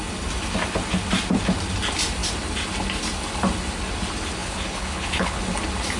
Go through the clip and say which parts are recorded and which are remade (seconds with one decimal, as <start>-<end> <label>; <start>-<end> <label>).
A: 0.0-4.4 recorded; 4.4-5.4 remade; 5.4-6.0 recorded